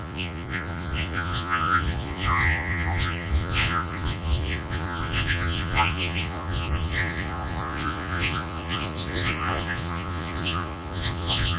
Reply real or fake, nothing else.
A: fake